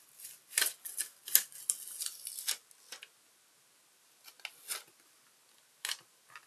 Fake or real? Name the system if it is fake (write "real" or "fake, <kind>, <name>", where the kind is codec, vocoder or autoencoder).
real